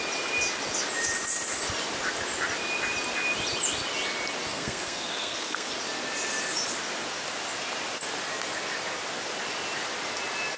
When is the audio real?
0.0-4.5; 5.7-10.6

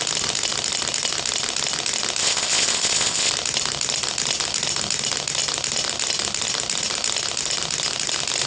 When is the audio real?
0.0-2.2; 3.3-8.5

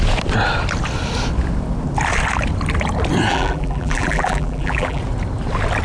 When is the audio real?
0.0-3.3; 5.0-5.8